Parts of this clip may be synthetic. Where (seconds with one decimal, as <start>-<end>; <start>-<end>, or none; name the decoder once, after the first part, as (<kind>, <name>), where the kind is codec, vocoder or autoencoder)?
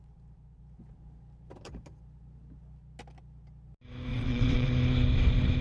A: 4.1-4.7 (vocoder, WaveNeXt)